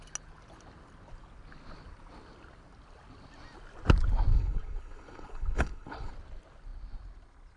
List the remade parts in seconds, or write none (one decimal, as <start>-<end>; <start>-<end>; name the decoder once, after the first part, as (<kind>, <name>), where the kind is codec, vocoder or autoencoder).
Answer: 4.3-6.1 (codec, HILCodec)